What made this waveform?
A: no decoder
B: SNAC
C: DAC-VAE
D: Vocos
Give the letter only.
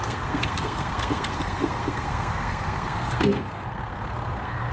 B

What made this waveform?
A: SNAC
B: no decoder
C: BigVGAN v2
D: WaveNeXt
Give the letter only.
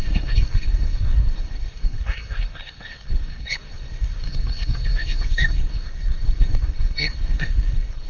A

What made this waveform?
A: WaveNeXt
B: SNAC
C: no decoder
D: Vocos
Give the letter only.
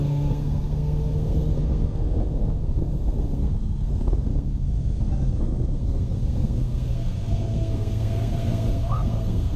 B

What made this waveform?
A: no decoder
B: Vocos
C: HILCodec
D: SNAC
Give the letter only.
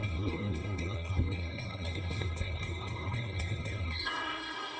D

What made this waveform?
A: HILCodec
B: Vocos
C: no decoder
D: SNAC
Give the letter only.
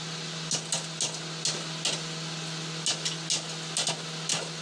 C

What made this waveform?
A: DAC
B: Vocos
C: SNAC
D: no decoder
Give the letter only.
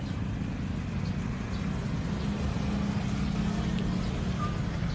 D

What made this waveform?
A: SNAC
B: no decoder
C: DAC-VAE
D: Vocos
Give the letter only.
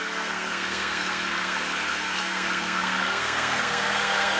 A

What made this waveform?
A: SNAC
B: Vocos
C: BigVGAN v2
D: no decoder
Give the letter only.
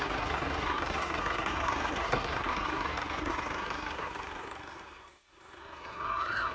A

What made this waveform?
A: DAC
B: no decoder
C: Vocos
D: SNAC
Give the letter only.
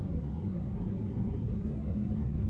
D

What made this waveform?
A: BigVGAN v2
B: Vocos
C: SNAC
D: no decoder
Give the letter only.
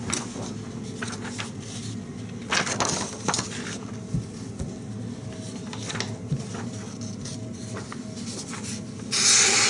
D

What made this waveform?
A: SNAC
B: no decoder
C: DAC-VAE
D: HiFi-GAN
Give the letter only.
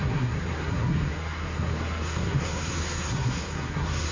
A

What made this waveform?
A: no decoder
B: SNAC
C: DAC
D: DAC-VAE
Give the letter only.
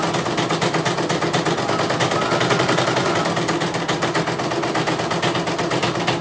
A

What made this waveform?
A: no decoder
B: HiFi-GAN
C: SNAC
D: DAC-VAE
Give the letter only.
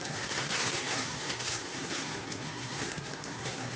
C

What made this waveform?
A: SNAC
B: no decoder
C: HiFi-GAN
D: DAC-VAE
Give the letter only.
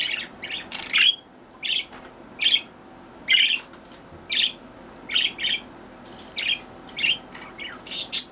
B